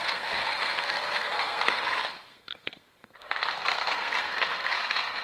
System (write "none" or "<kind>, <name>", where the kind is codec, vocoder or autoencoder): codec, SNAC